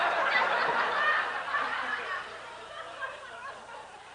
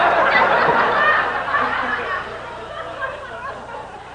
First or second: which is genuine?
second